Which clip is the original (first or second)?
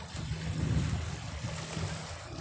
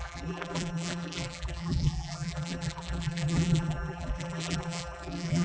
first